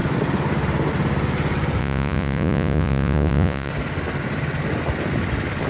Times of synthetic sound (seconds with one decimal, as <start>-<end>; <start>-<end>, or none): 1.8-3.7